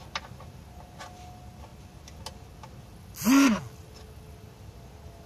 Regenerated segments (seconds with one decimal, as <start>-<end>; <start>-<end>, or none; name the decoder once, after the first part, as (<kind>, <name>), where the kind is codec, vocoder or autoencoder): none